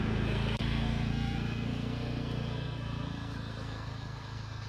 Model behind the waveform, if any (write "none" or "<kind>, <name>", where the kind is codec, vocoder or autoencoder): codec, SNAC